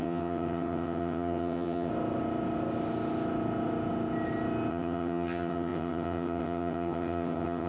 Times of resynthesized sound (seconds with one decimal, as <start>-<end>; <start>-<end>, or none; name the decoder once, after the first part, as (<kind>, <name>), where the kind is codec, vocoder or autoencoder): 0.0-1.9 (vocoder, HiFi-GAN); 4.7-7.7